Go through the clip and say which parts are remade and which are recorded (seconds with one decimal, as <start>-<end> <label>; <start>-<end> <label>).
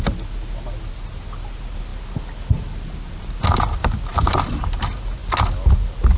0.0-4.1 recorded; 4.1-4.8 remade; 4.8-6.2 recorded